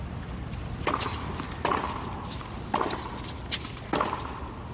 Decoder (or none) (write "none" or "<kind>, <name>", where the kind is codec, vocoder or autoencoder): none